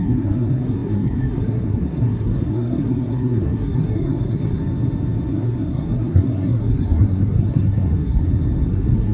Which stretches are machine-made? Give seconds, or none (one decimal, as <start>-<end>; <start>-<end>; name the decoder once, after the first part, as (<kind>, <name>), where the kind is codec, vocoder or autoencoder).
0.0-4.6 (codec, SNAC); 5.3-8.2; 8.7-9.1